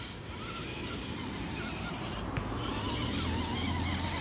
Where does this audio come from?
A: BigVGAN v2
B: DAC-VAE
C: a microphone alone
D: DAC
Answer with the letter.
C